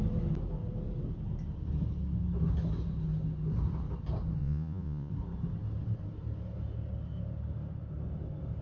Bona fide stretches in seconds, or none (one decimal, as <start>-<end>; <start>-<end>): 0.0-4.4; 5.1-8.6